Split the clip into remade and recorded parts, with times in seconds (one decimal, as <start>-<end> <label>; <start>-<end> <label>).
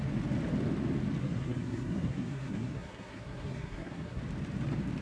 0.0-1.2 recorded; 1.2-4.2 remade; 4.2-5.0 recorded